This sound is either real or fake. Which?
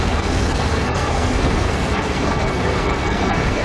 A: fake